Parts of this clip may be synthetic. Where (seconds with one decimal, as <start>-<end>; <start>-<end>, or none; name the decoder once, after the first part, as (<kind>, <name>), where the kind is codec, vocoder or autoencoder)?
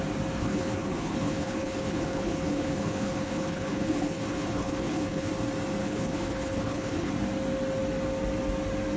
0.4-5.3 (codec, HILCodec); 5.8-7.1